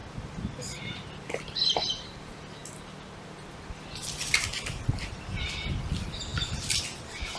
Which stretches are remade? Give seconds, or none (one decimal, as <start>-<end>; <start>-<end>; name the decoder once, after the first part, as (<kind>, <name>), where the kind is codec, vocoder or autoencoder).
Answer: none